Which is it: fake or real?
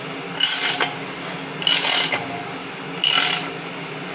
real